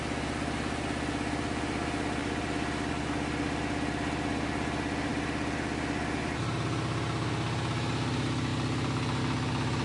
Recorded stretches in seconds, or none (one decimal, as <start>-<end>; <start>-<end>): 0.0-9.8